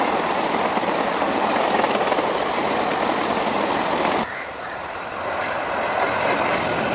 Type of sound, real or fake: fake